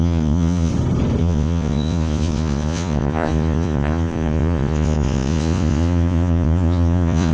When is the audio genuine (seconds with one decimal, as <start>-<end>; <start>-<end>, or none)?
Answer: 0.7-1.2